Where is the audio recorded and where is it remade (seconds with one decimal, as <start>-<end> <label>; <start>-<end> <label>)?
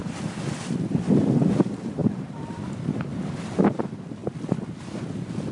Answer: 0.0-4.2 remade; 4.2-4.8 recorded; 4.8-5.5 remade